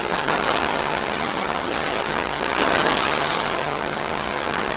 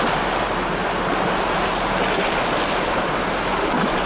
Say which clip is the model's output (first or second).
first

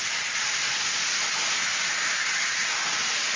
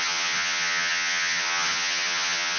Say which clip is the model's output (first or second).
second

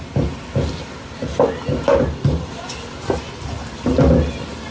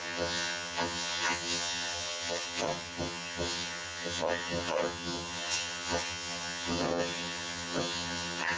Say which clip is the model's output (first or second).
second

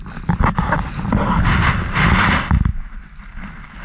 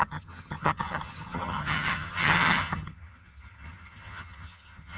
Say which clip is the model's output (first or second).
second